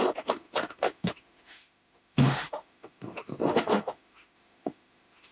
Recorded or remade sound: remade